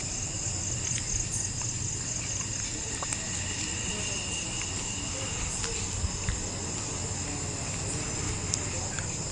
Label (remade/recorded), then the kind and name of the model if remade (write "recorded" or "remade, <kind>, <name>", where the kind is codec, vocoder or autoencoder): recorded